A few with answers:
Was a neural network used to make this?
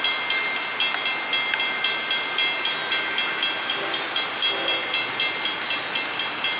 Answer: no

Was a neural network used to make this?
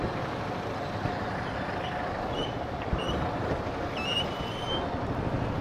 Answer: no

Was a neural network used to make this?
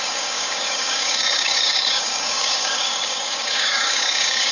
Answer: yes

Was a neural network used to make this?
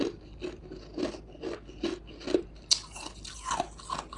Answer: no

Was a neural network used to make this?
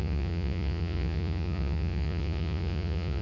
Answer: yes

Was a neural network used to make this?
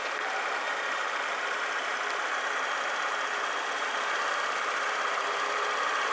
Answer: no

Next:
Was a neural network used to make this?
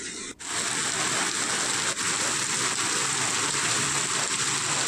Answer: no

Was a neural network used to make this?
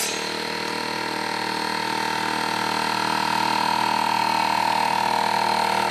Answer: no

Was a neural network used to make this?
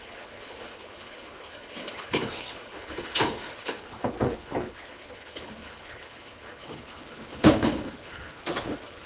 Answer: yes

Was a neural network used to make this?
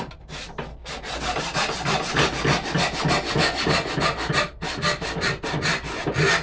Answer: no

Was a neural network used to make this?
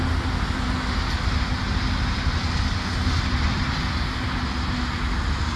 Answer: no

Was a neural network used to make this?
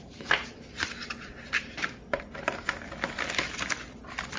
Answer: no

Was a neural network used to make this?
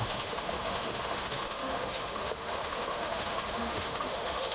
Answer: yes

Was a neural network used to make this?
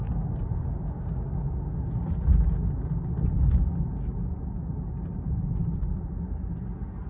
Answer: no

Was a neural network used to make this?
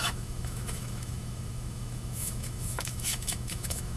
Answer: yes